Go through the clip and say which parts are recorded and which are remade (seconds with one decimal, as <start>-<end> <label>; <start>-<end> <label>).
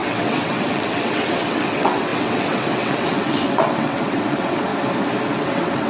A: 0.0-4.7 remade; 4.7-5.4 recorded; 5.4-5.9 remade